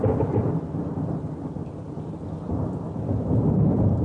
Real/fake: real